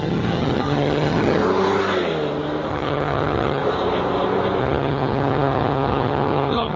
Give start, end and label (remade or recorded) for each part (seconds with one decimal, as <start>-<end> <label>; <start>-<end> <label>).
0.0-1.4 remade; 1.4-2.7 recorded; 2.7-3.6 remade; 3.6-4.6 recorded; 4.6-6.8 remade